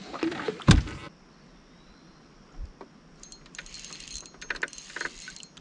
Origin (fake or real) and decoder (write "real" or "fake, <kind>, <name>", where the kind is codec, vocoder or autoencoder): real